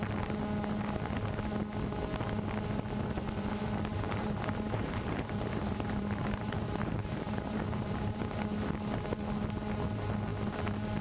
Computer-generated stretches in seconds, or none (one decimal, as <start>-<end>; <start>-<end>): 3.9-8.2